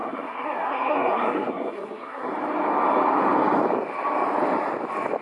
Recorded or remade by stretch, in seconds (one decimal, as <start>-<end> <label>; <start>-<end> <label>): 0.0-2.3 remade; 2.3-5.2 recorded